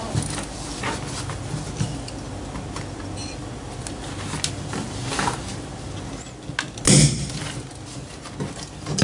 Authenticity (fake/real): real